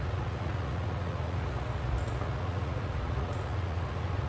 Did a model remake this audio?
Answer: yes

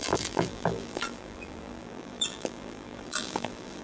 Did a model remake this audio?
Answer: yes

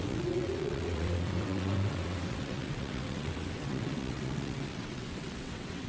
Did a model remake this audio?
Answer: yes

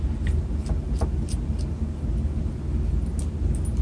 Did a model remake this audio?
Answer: no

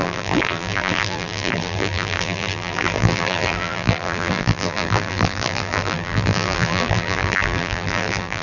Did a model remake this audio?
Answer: yes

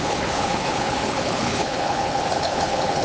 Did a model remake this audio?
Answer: yes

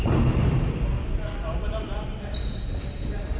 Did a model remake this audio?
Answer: no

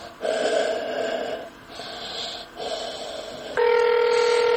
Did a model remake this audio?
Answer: no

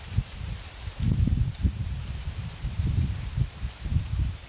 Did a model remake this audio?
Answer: yes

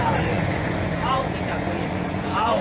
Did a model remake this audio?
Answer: yes